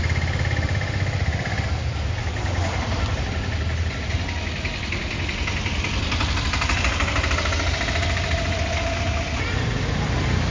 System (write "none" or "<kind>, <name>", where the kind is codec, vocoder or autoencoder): none